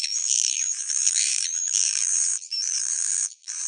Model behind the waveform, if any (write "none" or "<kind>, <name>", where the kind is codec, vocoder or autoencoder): vocoder, BigVGAN v2